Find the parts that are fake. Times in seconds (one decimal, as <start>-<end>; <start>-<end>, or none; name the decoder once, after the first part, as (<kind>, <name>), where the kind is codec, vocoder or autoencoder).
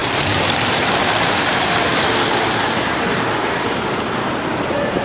0.0-5.0 (vocoder, BigVGAN v2)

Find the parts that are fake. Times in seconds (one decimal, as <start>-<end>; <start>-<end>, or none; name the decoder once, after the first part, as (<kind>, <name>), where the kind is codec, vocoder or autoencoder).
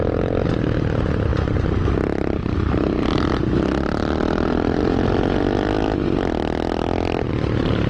none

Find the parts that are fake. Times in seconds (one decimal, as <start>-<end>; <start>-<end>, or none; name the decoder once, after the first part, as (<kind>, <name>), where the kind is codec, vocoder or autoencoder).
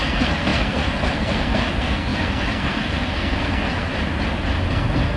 0.0-3.9 (codec, SNAC); 4.7-5.2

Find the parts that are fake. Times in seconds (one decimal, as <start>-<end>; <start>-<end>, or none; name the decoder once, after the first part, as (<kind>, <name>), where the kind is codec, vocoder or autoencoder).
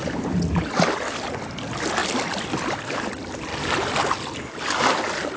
2.0-3.1 (vocoder, BigVGAN v2)